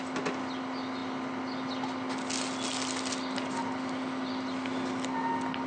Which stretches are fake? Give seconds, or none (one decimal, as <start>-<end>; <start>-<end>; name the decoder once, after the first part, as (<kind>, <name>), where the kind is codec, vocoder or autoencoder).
none